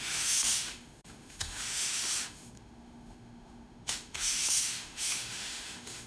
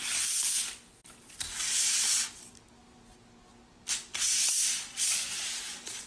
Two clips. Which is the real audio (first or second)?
second